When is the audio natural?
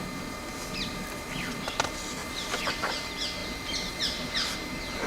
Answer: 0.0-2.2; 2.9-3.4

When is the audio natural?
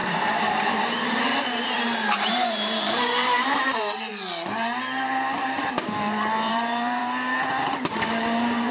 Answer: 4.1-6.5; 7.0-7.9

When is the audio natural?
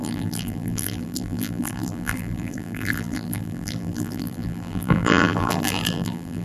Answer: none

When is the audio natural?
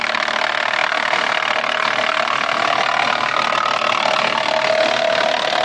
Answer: 0.0-5.6